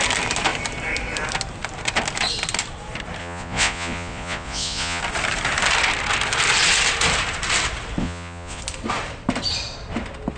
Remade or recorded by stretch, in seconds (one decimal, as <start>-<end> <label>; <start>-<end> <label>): 0.0-3.2 recorded; 3.2-5.0 remade; 5.0-8.0 recorded; 8.0-8.6 remade; 8.6-10.4 recorded